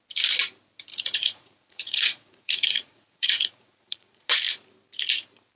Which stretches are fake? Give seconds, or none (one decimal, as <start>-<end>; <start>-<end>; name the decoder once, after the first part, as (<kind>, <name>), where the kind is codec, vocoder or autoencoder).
0.9-4.3 (vocoder, Vocos)

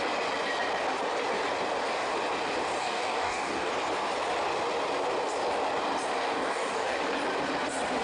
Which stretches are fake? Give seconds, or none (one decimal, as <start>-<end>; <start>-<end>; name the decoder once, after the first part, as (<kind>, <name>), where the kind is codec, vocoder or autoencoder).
2.8-3.7 (codec, DAC); 6.2-7.0

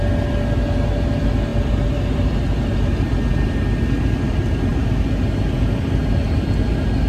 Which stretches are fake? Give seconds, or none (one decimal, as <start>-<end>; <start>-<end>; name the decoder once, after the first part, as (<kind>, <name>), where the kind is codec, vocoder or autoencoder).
none

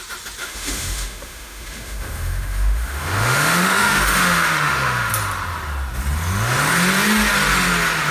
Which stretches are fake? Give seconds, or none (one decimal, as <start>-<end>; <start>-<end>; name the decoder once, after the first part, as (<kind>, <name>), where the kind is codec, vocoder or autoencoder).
0.4-5.1 (autoencoder, DAC-VAE)